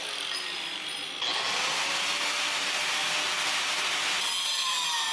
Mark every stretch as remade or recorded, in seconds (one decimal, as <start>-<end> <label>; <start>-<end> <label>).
0.0-5.1 recorded